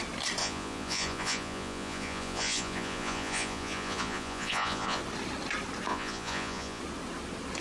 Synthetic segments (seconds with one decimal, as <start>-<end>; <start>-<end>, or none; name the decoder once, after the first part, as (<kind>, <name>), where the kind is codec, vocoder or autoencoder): 0.4-5.0 (vocoder, Vocos); 5.9-6.8